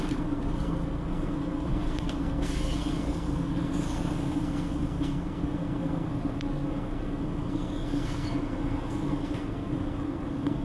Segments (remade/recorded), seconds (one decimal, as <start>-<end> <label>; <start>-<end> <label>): 0.0-10.6 remade